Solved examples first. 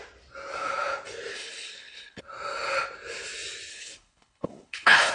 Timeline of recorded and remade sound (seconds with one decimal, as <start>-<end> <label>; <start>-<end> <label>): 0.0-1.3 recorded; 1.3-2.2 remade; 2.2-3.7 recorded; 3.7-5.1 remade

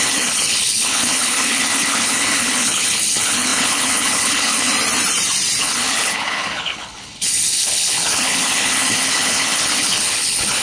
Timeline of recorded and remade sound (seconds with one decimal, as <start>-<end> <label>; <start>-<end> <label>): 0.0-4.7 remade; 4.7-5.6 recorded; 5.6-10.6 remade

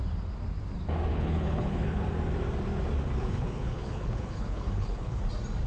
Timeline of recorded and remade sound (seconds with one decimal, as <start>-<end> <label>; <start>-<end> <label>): 0.0-1.1 recorded; 1.1-2.0 remade; 2.0-3.2 recorded; 3.2-5.2 remade; 5.2-5.7 recorded

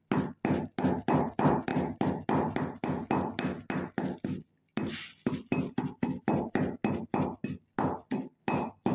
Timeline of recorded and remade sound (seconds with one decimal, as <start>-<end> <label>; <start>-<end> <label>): 0.0-8.9 recorded